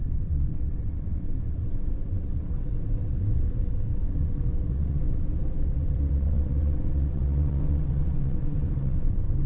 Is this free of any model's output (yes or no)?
no